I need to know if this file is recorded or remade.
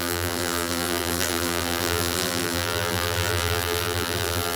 remade